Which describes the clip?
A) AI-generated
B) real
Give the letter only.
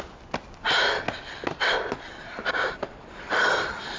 B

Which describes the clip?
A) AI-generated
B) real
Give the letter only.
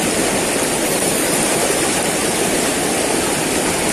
B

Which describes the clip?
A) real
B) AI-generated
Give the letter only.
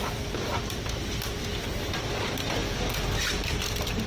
A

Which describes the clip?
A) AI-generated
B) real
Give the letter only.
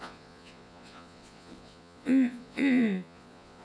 A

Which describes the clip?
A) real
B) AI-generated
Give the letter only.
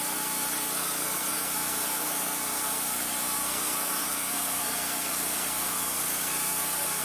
B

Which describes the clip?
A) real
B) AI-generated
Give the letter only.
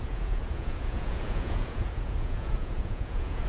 B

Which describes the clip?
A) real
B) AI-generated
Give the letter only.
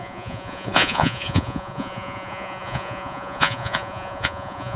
B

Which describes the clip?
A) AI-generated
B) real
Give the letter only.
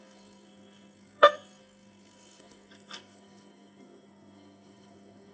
A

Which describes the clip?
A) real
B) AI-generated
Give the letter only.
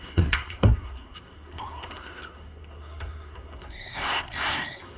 B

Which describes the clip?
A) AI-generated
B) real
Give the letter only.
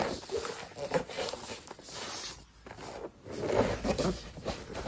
B